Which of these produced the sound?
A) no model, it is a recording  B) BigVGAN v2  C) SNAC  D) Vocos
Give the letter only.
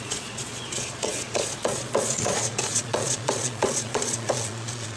D